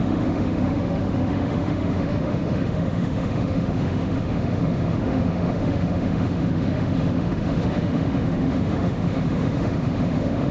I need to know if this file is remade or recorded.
remade